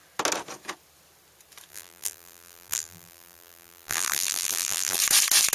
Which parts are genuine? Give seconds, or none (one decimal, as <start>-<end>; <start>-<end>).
0.0-1.7; 5.0-5.5